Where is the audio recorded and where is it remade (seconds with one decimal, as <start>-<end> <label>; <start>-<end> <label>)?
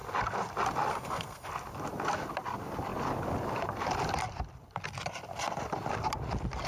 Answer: 0.0-0.9 recorded; 0.9-1.5 remade; 1.5-6.7 recorded